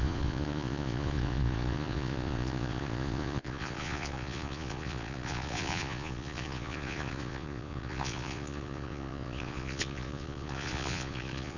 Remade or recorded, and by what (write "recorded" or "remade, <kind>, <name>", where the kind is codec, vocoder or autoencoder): remade, vocoder, Vocos